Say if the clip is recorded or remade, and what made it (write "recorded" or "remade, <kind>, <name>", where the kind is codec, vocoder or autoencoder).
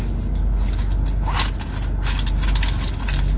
recorded